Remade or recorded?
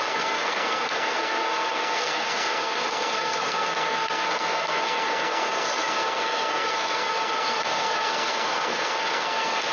remade